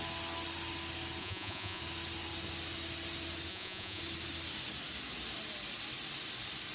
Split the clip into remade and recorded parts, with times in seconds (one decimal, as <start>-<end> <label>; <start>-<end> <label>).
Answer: 0.0-1.2 recorded; 1.2-1.8 remade; 1.8-3.5 recorded; 3.5-4.0 remade; 4.0-6.7 recorded

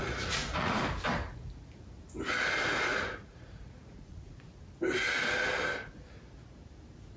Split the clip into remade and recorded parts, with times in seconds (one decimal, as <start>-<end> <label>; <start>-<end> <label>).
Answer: 0.0-0.8 remade; 0.8-2.9 recorded; 2.9-4.6 remade; 4.6-7.2 recorded

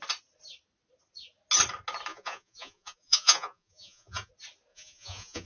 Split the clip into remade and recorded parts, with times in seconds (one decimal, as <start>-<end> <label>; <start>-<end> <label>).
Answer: 0.0-2.1 recorded; 2.1-4.3 remade; 4.3-4.7 recorded; 4.7-5.5 remade

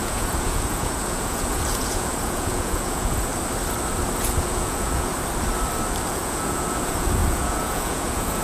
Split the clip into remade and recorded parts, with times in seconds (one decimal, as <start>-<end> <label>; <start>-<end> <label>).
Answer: 0.0-3.3 remade; 3.3-4.2 recorded; 4.2-5.1 remade; 5.1-6.1 recorded; 6.1-8.4 remade